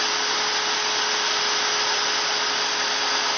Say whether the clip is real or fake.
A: real